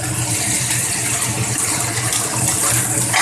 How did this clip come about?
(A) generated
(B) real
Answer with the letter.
B